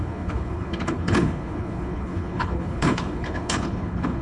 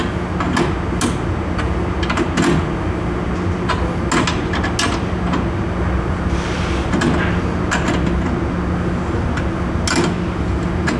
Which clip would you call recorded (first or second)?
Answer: second